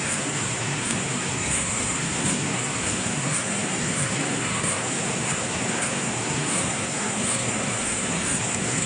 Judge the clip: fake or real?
fake